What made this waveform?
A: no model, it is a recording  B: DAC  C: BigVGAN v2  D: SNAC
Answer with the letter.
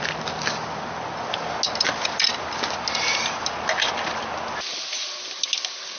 A